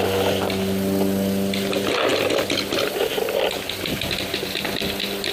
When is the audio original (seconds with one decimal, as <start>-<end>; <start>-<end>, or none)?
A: 0.0-5.3